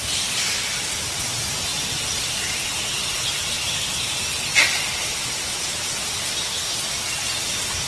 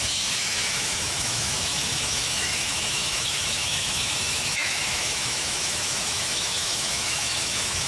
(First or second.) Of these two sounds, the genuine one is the first